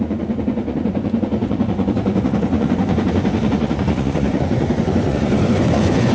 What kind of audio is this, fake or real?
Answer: fake